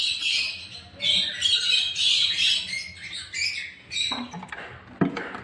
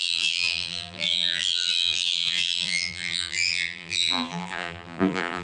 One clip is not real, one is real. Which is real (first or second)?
first